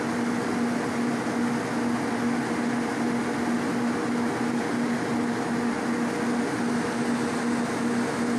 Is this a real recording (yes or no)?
yes